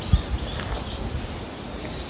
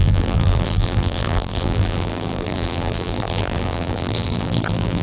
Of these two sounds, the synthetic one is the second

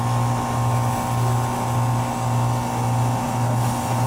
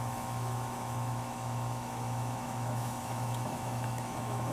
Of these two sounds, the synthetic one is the second